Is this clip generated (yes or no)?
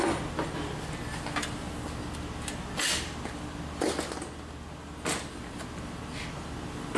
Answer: no